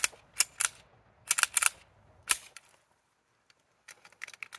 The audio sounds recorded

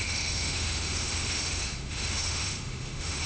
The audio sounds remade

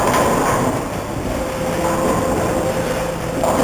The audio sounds recorded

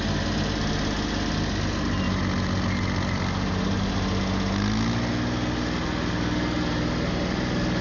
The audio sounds recorded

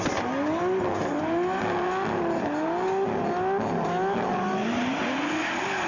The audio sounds recorded